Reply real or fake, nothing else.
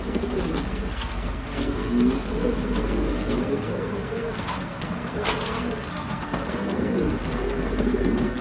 fake